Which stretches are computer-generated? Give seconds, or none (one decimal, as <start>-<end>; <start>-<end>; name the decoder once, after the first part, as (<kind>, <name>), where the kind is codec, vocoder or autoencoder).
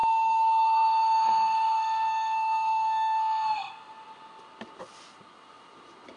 0.0-3.7 (codec, SNAC)